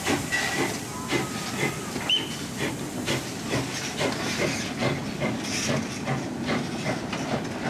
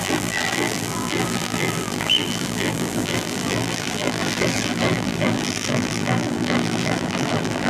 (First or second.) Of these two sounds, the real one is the first